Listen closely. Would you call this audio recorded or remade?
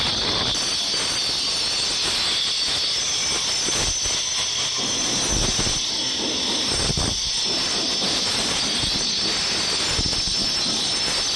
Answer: recorded